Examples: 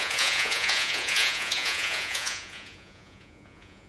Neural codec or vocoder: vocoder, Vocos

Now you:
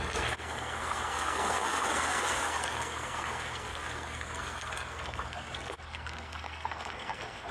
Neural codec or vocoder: codec, SNAC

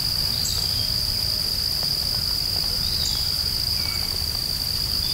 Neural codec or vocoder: none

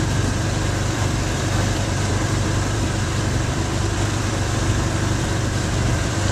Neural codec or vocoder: vocoder, BigVGAN v2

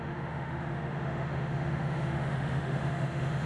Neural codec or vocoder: autoencoder, DAC-VAE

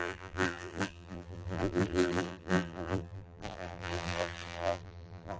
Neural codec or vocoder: vocoder, BigVGAN v2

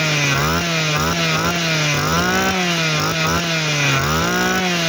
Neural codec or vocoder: none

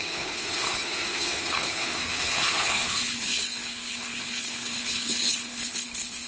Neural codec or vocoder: codec, HILCodec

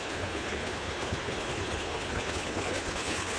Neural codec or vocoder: codec, HILCodec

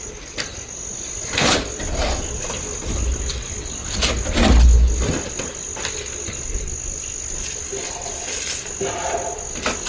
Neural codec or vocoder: none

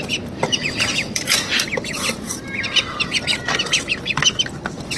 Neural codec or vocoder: vocoder, BigVGAN v2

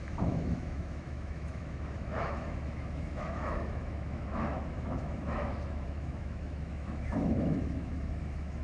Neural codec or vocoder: autoencoder, DAC-VAE